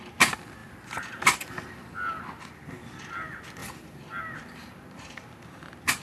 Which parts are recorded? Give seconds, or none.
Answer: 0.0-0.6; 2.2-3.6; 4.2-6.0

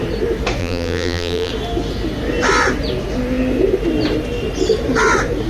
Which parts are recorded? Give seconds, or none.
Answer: 0.0-0.6; 1.5-5.5